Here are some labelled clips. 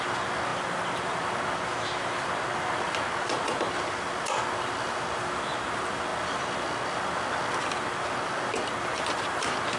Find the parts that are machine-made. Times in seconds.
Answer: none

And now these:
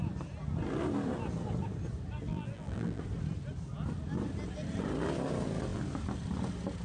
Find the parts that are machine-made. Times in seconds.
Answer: 2.3-3.0 (vocoder, BigVGAN v2)

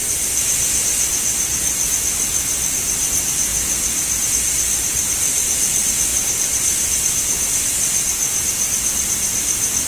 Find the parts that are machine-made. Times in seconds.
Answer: 3.5-4.3 (vocoder, BigVGAN v2); 6.1-7.8

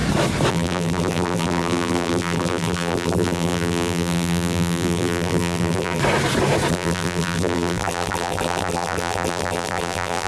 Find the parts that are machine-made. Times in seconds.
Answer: 0.5-6.0 (vocoder, BigVGAN v2); 6.7-10.3

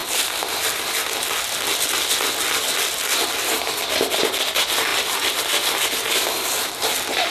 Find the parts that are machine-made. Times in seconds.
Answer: none

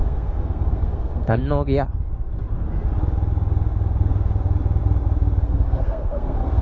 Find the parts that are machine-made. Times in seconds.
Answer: 0.0-1.4 (codec, SNAC); 5.4-6.6